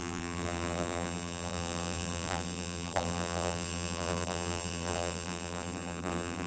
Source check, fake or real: fake